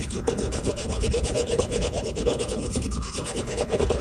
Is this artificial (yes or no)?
yes